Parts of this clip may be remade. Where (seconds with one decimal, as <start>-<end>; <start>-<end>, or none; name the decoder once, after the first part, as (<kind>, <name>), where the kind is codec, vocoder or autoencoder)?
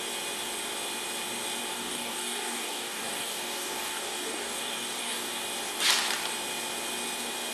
1.7-5.4 (codec, DAC)